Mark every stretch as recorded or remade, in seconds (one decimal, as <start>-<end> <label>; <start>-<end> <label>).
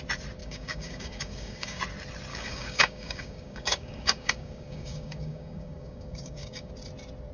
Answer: 0.0-0.4 recorded; 0.4-1.8 remade; 1.8-2.3 recorded; 2.3-6.7 remade; 6.7-7.3 recorded